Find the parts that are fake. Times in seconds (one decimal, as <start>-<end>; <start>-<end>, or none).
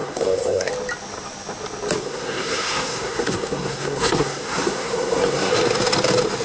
0.0-0.7; 2.0-5.5